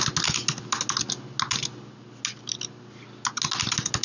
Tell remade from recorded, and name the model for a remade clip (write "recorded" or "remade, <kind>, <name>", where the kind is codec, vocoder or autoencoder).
recorded